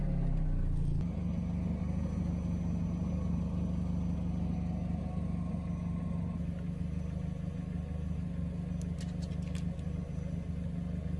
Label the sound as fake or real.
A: real